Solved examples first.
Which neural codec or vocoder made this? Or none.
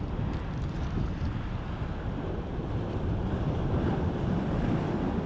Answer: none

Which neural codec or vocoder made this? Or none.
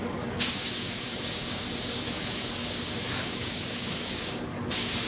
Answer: codec, DAC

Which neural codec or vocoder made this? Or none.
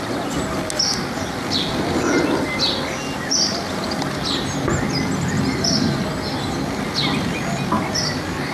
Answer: none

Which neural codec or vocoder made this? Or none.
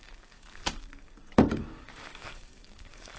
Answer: codec, DAC